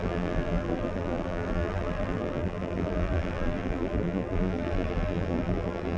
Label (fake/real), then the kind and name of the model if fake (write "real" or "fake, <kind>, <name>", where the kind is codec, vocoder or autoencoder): fake, vocoder, BigVGAN v2